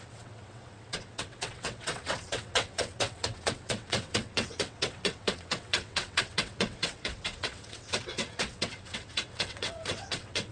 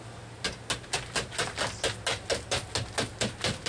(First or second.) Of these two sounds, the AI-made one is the first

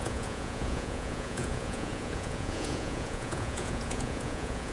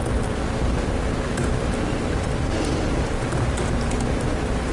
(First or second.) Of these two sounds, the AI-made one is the first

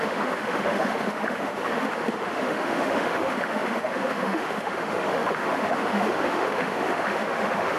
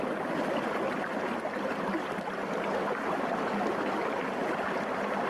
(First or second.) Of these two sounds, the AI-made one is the first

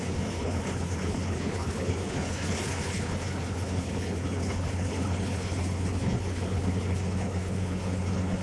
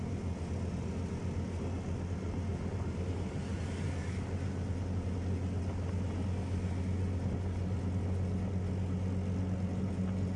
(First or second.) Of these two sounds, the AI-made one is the first